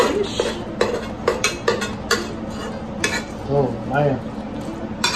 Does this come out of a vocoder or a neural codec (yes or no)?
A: no